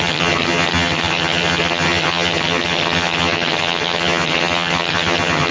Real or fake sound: fake